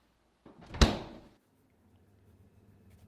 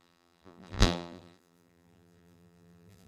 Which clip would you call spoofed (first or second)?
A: second